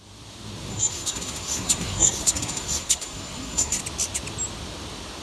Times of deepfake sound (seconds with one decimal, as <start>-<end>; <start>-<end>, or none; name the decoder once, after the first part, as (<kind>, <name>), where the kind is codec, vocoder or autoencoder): 0.7-3.8 (codec, SNAC)